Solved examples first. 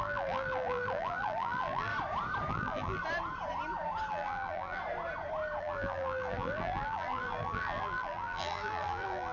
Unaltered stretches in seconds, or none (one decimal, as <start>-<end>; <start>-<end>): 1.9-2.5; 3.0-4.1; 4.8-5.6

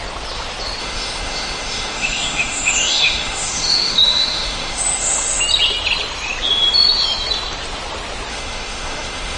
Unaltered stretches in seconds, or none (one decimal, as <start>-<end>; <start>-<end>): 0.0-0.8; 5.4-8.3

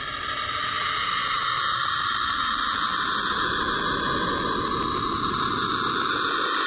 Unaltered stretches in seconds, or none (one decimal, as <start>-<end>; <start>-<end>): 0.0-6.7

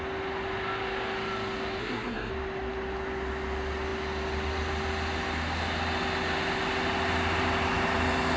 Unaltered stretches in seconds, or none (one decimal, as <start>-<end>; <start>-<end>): 0.0-1.8; 2.3-8.4